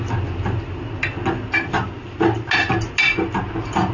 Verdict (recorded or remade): recorded